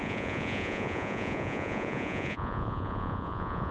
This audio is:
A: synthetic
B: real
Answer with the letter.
A